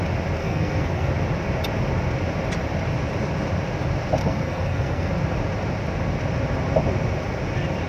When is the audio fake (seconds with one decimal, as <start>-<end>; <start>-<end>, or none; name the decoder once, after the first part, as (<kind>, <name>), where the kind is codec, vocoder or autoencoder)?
0.4-1.1 (codec, SNAC); 4.2-5.1